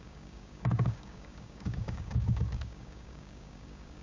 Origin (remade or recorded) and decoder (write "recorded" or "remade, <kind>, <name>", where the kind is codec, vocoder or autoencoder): remade, codec, DAC